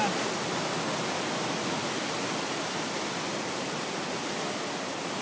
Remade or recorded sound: recorded